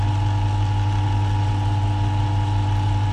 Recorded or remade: recorded